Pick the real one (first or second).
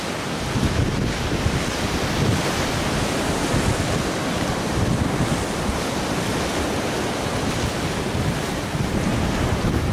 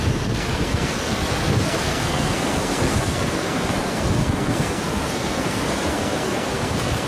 first